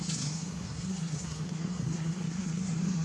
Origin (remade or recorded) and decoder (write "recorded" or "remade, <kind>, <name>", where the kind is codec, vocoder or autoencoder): remade, codec, SNAC